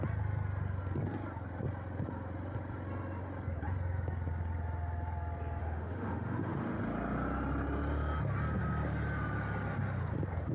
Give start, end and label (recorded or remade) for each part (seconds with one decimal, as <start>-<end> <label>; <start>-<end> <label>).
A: 0.0-5.6 recorded; 5.6-6.8 remade; 6.8-10.5 recorded

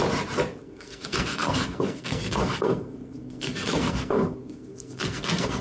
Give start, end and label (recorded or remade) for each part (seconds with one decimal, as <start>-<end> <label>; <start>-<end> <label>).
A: 0.0-0.6 recorded; 0.6-5.6 remade

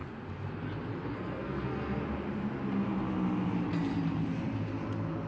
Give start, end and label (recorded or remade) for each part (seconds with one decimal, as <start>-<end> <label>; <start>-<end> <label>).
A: 0.0-1.1 recorded; 1.1-2.0 remade; 2.0-5.3 recorded

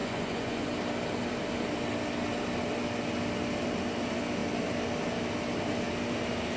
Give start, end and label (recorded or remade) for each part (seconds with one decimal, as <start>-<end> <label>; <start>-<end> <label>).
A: 0.0-0.7 remade; 0.7-6.6 recorded